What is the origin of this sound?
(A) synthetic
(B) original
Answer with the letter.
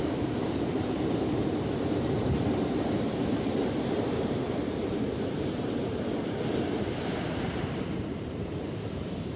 A